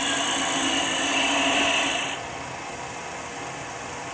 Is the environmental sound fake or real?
real